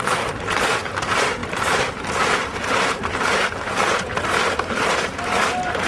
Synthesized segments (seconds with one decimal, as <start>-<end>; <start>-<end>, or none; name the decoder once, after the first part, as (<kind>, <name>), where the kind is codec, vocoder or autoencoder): 0.0-5.9 (vocoder, BigVGAN v2)